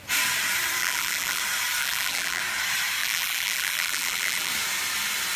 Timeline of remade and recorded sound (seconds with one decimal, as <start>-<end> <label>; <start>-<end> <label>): 0.0-0.8 recorded; 0.8-1.4 remade; 1.4-1.8 recorded; 1.8-2.4 remade; 2.4-3.0 recorded; 3.0-4.5 remade; 4.5-5.4 recorded